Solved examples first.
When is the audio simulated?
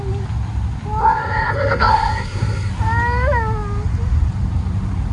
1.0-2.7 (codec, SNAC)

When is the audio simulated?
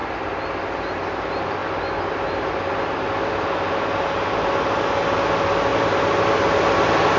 none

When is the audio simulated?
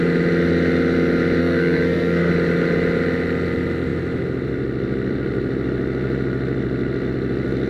1.4-2.3 (codec, SNAC)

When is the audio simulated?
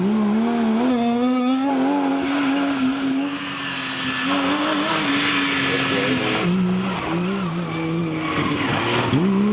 0.9-1.7 (codec, SNAC)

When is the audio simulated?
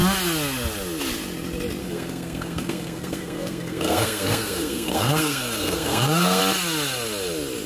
1.8-6.4 (codec, SNAC)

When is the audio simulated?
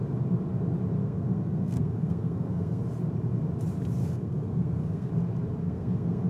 1.0-2.8 (codec, SNAC); 4.0-5.1; 5.6-6.3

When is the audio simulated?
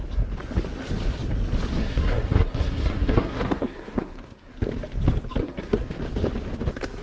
1.8-4.5 (codec, SNAC); 5.4-6.0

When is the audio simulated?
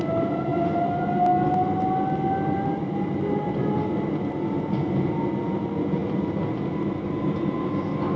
none